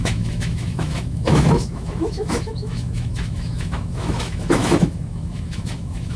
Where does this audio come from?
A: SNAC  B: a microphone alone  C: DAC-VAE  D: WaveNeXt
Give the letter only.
C